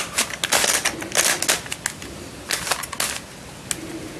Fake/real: real